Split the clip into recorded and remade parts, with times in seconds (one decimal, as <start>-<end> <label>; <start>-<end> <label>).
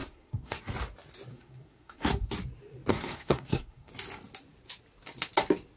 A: 0.0-0.6 remade; 0.6-1.3 recorded; 1.3-2.3 remade; 2.3-2.9 recorded; 2.9-3.9 remade; 3.9-5.8 recorded